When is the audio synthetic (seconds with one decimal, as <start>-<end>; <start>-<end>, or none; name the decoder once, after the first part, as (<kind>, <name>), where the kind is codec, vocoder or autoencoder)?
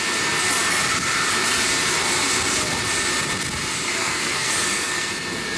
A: 4.0-5.1 (codec, SNAC)